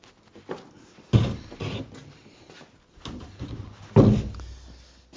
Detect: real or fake real